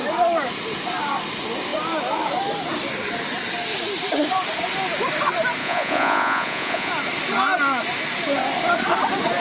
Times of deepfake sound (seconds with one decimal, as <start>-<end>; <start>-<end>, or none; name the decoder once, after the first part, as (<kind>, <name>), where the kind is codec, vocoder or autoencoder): 5.6-6.9 (vocoder, Vocos)